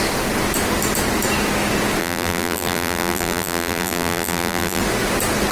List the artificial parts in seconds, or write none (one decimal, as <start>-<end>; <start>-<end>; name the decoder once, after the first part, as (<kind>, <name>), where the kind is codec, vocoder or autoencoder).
2.0-4.8 (vocoder, BigVGAN v2)